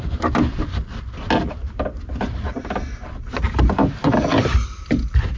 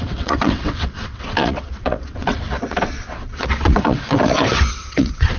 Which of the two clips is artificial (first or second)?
second